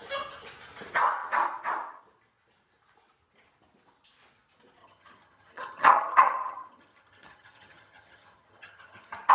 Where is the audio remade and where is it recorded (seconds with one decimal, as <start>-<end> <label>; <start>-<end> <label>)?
0.0-4.8 recorded; 4.8-9.3 remade